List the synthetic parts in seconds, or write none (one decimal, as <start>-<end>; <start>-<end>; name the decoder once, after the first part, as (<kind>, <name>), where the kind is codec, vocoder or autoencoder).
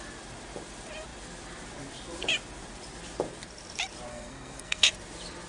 4.1-4.9 (codec, SNAC)